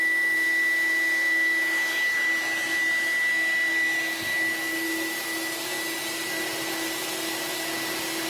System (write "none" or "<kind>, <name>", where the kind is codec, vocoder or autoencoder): none